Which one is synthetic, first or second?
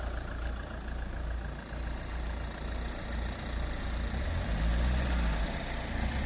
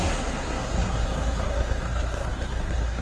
second